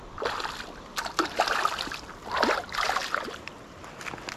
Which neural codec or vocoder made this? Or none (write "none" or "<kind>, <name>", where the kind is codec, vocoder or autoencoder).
none